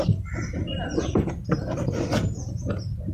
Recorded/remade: recorded